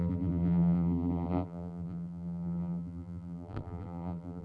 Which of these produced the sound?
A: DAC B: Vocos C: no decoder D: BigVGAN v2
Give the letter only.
D